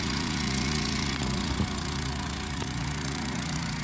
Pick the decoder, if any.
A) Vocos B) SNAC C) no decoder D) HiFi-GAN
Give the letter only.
A